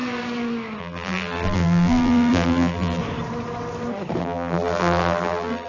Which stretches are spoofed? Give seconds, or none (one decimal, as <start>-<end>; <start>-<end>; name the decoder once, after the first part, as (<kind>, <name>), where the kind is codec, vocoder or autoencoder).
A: 0.8-3.0 (vocoder, BigVGAN v2); 4.2-5.7